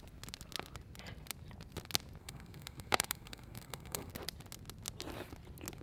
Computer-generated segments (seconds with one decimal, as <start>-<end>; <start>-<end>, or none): 2.2-4.1